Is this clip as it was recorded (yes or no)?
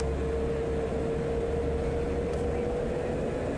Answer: yes